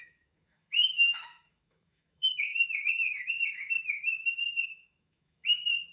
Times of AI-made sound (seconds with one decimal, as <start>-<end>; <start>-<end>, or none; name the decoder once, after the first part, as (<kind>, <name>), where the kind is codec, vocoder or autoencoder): 0.0-5.9 (autoencoder, DAC-VAE)